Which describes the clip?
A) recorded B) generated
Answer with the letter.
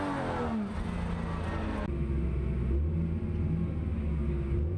A